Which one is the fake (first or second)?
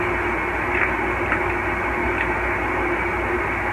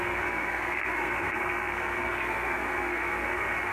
second